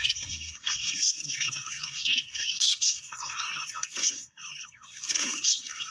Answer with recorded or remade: remade